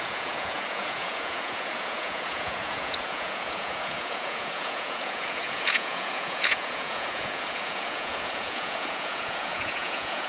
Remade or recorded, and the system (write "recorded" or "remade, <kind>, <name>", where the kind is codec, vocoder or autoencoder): remade, vocoder, Vocos